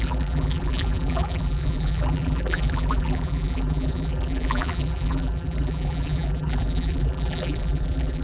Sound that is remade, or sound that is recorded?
remade